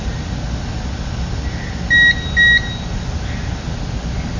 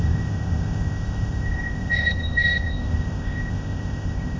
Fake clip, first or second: second